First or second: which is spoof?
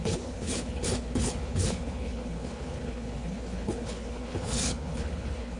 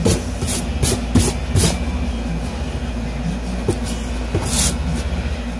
first